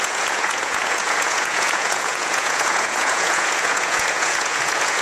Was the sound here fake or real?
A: fake